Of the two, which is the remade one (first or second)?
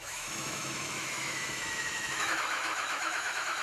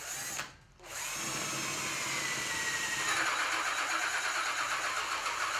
first